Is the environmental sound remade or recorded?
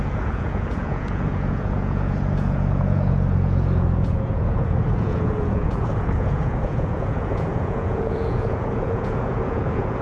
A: remade